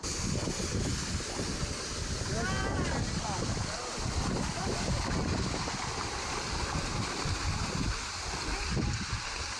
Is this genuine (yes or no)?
yes